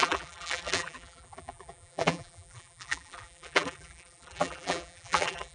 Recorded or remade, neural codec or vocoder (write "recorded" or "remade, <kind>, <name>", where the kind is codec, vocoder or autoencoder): remade, vocoder, BigVGAN v2